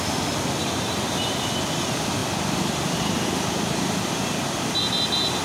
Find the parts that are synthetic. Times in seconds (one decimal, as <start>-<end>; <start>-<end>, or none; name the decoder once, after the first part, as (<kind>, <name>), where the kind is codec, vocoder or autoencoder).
none